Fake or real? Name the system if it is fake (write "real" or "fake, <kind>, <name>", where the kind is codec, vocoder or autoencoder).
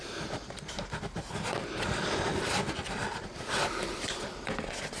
real